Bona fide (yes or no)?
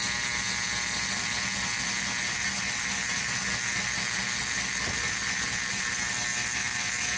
yes